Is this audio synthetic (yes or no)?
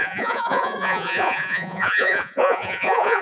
yes